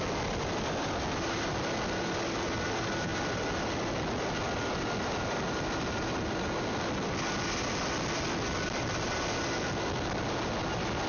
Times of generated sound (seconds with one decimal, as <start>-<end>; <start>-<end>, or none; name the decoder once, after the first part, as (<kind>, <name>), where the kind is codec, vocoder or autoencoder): none

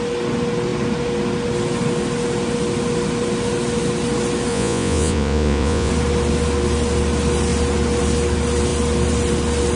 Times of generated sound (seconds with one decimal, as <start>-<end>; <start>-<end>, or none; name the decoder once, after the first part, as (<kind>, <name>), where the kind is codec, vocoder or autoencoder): 4.5-5.9 (vocoder, Vocos)

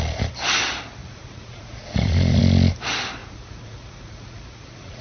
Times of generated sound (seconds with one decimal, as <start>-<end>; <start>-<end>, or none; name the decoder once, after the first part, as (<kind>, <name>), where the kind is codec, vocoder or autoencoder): 1.0-2.4 (vocoder, Vocos); 3.2-5.0

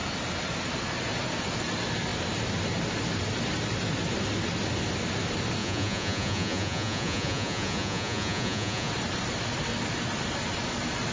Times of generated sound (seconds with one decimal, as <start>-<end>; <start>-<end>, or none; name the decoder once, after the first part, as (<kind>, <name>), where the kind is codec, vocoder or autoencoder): 5.6-8.9 (vocoder, Vocos)

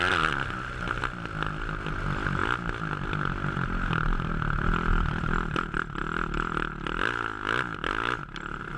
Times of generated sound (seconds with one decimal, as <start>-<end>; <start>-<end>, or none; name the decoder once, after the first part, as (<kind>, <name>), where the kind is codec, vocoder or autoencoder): none